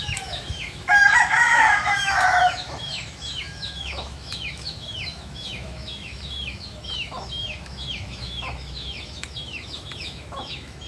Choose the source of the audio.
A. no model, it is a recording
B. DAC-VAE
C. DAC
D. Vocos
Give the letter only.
B